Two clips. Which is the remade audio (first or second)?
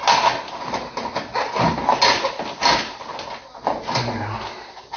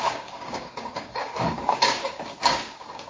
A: second